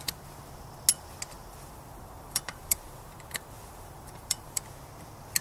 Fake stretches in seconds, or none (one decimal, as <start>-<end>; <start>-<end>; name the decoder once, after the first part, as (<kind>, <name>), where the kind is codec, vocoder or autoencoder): 1.4-4.6 (vocoder, BigVGAN v2)